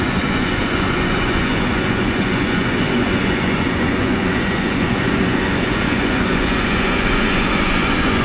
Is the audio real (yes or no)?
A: no